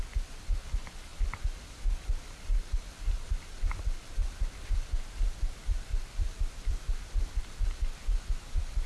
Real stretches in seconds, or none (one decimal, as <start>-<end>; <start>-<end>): 0.0-8.9